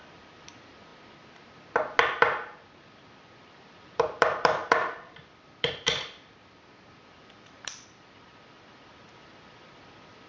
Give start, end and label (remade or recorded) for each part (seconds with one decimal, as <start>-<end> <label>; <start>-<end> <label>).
0.0-0.9 remade; 0.9-3.4 recorded; 3.4-4.6 remade; 4.6-5.2 recorded; 5.2-10.3 remade